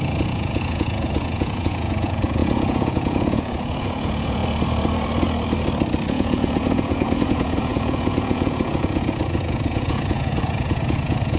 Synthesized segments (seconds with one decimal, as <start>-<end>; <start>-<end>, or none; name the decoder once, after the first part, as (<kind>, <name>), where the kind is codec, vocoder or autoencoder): 0.0-4.4 (vocoder, Vocos); 6.1-11.4

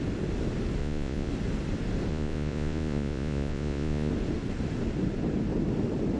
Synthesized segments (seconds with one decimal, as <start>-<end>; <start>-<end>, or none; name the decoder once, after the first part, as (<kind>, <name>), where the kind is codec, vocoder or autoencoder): 0.8-1.3 (vocoder, Vocos); 2.1-4.1